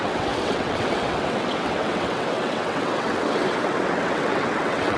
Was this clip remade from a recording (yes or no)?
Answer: yes